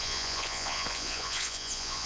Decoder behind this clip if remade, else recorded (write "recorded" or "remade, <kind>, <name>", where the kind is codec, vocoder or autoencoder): remade, vocoder, Vocos